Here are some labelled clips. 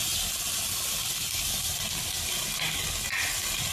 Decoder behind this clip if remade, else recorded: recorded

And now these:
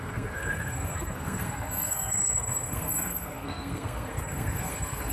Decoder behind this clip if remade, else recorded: remade, codec, SNAC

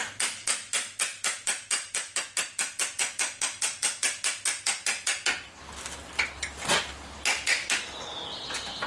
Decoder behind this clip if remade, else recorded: recorded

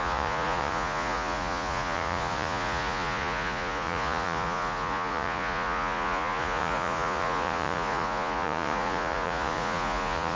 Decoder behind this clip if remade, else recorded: remade, vocoder, Vocos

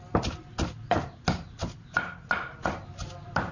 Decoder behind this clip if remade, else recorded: recorded